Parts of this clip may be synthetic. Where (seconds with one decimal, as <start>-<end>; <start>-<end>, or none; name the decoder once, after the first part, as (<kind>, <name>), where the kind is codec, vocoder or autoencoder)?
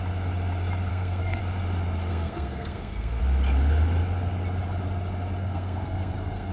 0.9-1.4 (codec, SNAC); 2.1-3.2; 5.4-6.5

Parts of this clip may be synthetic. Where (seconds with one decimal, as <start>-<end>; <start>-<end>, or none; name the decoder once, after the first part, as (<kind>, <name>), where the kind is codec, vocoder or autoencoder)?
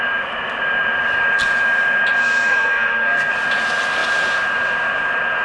2.2-3.3 (codec, SNAC)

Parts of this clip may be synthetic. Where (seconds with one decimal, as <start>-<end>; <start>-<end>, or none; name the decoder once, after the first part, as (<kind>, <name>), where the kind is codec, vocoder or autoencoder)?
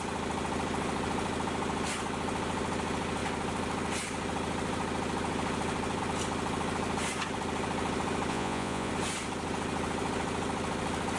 8.3-8.9 (vocoder, Vocos)